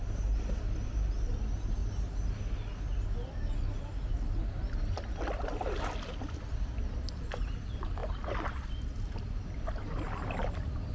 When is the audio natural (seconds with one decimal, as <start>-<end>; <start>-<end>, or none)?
0.0-10.9